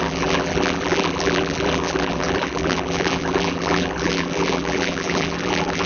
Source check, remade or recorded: remade